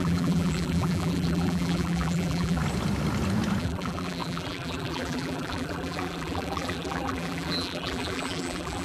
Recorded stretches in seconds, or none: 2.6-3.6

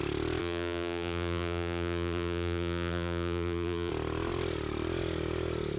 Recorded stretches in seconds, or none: 0.0-0.4; 3.9-5.8

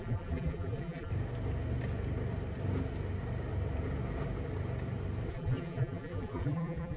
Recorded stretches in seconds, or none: 1.1-5.3

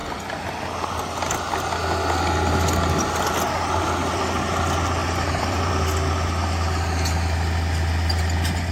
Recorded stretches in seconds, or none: 0.0-5.0; 5.7-8.7

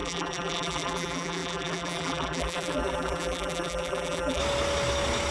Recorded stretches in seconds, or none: 4.4-5.3

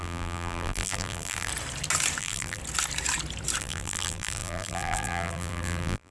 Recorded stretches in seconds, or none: 1.5-2.2; 2.6-3.6